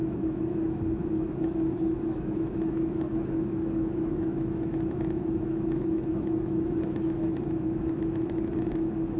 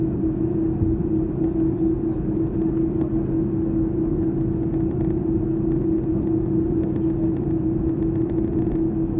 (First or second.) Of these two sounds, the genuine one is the second